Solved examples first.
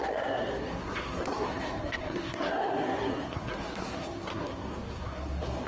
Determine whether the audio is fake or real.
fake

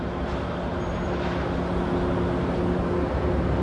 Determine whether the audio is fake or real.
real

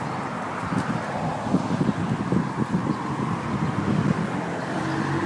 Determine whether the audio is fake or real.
real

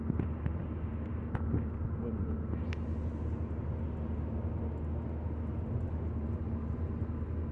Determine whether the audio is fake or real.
real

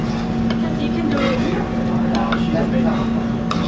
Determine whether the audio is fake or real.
real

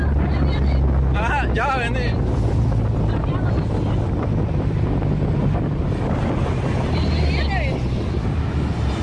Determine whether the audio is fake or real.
real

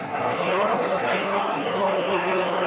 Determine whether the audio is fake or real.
fake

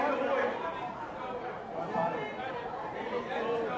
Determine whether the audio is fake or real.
real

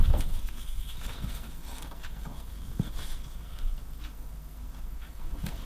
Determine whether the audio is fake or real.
fake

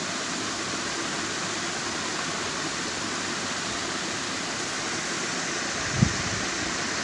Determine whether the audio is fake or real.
real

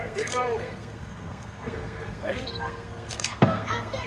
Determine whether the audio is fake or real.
fake